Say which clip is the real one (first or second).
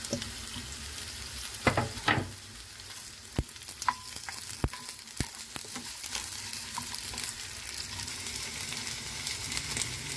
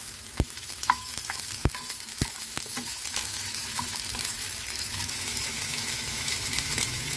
first